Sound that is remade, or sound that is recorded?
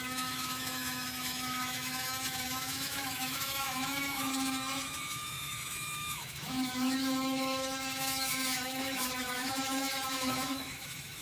remade